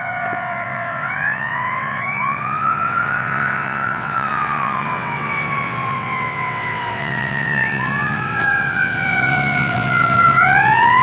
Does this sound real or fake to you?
fake